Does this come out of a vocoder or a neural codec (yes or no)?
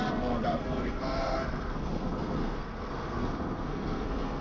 yes